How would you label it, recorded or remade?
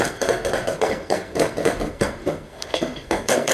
remade